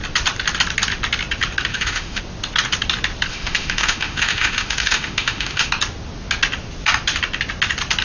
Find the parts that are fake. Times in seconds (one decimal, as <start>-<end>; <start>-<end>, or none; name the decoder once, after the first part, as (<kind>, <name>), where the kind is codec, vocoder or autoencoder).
1.7-2.2 (autoencoder, DAC-VAE); 3.3-5.7